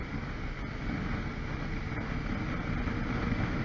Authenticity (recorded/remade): recorded